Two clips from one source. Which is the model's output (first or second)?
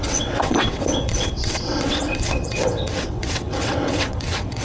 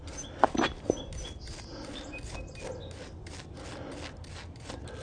first